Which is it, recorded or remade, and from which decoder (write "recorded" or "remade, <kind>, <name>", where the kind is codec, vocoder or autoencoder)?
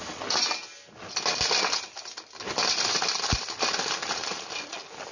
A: recorded